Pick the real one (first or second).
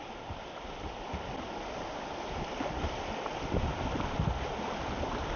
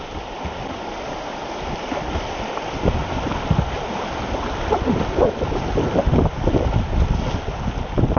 second